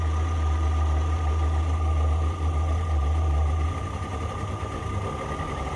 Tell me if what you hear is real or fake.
real